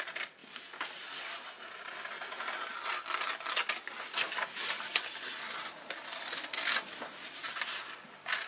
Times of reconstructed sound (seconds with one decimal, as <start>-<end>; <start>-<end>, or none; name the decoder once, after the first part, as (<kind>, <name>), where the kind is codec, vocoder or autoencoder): none